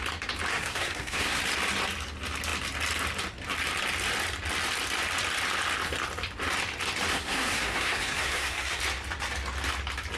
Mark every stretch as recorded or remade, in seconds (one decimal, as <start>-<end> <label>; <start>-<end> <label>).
0.0-0.5 recorded; 0.5-1.4 remade; 1.4-7.1 recorded; 7.1-8.8 remade; 8.8-10.2 recorded